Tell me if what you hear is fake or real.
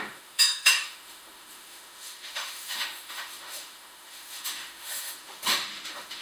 fake